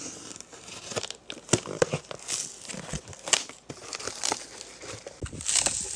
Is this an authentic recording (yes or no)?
yes